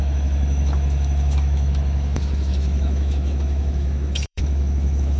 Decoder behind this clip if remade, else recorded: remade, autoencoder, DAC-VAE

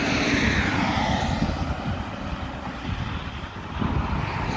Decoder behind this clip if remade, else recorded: recorded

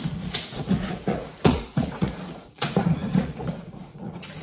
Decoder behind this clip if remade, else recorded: remade, vocoder, Vocos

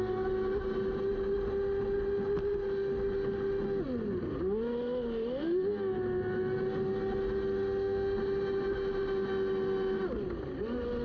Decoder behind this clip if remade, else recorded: recorded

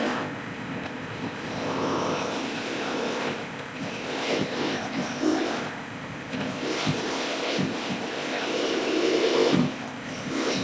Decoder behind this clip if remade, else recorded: remade, codec, ZipCodec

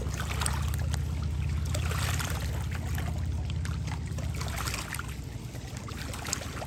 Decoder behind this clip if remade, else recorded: recorded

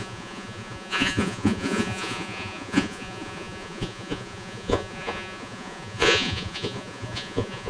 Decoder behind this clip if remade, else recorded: remade, vocoder, Vocos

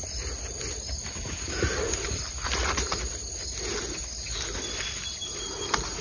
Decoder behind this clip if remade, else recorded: recorded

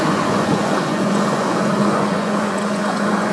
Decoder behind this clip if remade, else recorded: remade, vocoder, Vocos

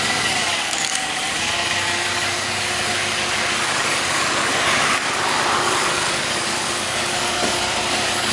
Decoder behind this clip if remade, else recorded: remade, codec, DAC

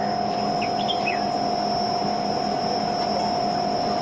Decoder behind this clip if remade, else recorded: recorded